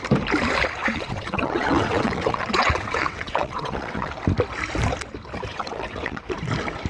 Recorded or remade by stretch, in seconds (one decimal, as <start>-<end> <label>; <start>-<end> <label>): 0.0-0.8 recorded; 0.8-4.1 remade; 4.1-5.5 recorded; 5.5-6.2 remade; 6.2-6.9 recorded